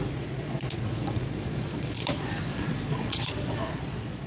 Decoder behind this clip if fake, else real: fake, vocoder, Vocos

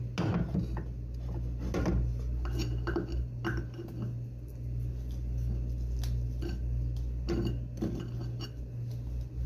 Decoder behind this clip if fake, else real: real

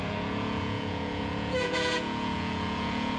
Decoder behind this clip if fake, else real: fake, vocoder, Vocos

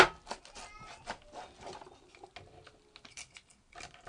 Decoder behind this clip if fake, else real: real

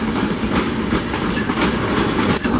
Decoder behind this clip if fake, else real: real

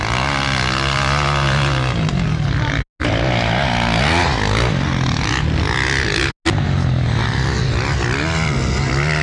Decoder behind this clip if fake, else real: real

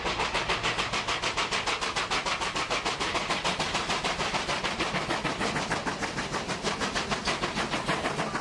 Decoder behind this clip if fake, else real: real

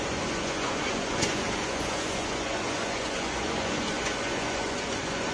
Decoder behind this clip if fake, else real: fake, vocoder, Vocos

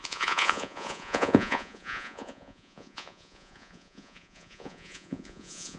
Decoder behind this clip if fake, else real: fake, vocoder, Vocos